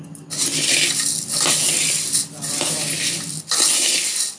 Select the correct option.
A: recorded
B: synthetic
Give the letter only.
A